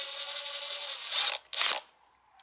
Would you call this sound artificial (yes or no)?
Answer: no